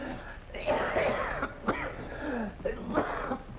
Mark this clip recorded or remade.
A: recorded